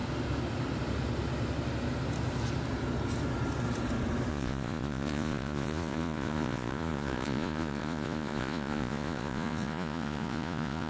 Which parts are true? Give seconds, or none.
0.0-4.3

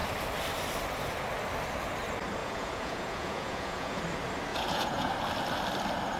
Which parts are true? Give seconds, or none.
0.0-2.4; 4.0-4.5; 5.1-6.2

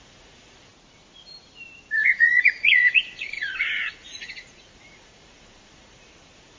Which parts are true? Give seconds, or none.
0.7-2.0

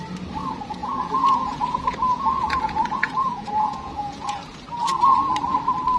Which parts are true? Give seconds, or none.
0.0-0.8; 4.4-6.0

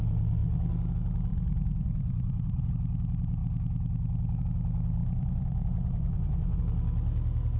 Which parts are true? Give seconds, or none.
0.0-1.3; 2.7-5.0; 6.6-7.6

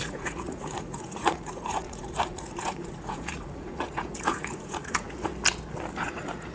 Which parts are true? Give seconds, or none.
5.3-6.0

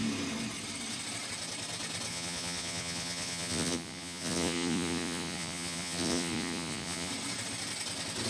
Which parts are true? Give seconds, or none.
0.0-2.1; 7.1-8.3

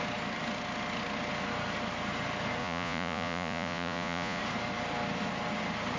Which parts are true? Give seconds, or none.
0.0-2.6; 4.4-6.0